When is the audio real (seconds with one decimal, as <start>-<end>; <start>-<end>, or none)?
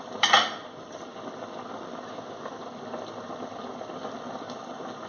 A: 1.1-4.2